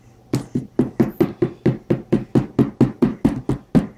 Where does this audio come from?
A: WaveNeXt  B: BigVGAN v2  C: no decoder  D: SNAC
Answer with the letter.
C